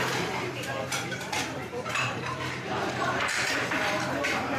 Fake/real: fake